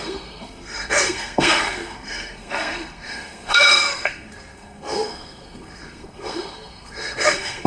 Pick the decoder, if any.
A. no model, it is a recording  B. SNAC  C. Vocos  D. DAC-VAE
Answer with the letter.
B